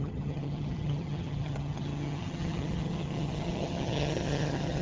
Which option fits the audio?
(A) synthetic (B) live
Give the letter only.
A